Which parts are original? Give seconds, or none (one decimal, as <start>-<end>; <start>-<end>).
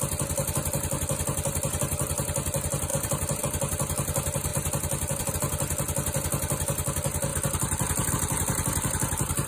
0.0-2.9; 3.4-4.5; 5.3-9.5